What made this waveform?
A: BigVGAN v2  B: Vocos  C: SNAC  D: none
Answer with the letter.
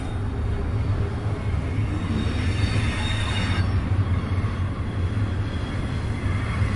D